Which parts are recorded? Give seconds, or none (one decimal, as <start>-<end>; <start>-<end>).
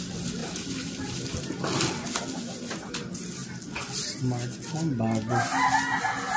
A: 0.0-0.4; 1.4-6.4